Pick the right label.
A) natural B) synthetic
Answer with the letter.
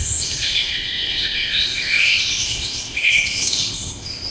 B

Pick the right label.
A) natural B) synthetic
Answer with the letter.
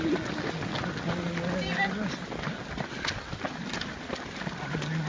A